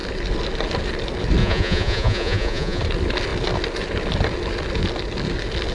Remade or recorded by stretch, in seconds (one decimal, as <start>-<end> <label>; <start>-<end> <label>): 0.0-1.4 recorded; 1.4-2.8 remade; 2.8-5.7 recorded